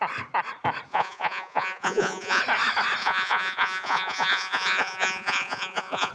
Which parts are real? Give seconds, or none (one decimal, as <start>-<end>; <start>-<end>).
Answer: 0.0-0.9; 2.4-3.0